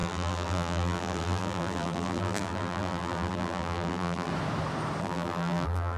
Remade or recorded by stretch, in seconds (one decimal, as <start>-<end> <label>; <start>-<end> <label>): 0.0-4.3 remade; 4.3-5.0 recorded; 5.0-6.0 remade